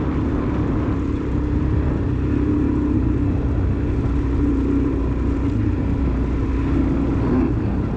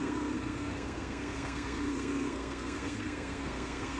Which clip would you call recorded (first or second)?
first